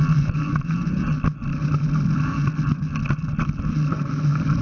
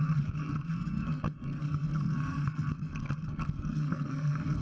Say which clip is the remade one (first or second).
second